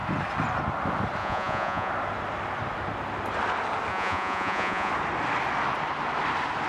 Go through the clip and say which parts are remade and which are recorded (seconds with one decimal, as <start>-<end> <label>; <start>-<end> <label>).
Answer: 0.0-1.2 recorded; 1.2-1.9 remade; 1.9-3.9 recorded; 3.9-4.9 remade; 4.9-6.7 recorded